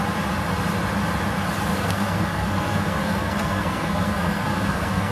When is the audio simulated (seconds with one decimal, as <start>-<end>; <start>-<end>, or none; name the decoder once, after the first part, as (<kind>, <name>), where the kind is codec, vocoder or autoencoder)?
1.7-5.1 (codec, SNAC)